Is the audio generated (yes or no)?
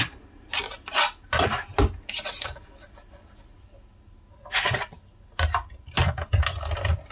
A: no